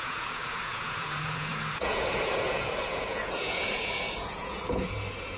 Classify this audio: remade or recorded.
remade